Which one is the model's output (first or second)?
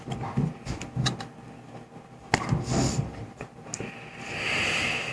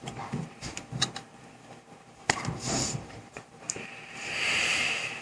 second